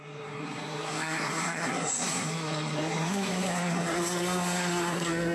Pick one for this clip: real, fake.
fake